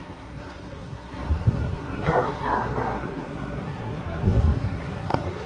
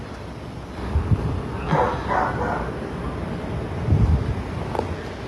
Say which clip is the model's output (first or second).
first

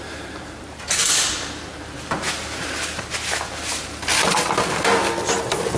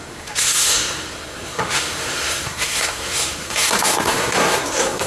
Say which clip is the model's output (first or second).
second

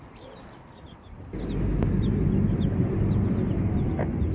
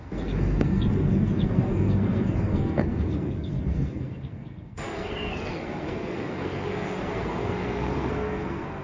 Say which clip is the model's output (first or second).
second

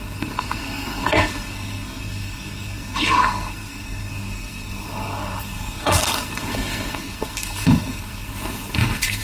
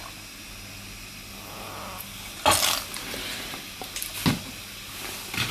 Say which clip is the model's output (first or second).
first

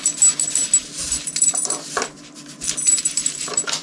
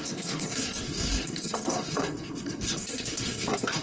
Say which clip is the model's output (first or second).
second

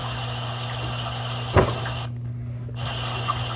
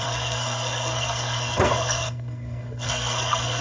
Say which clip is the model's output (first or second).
second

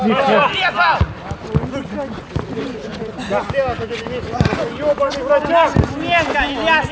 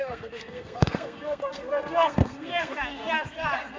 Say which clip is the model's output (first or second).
second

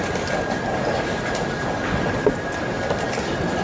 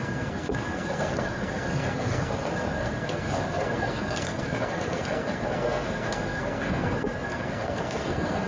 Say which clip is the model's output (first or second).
second